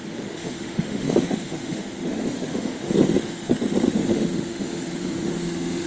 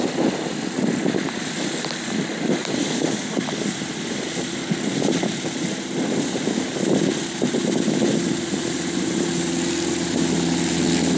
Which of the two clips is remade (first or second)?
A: first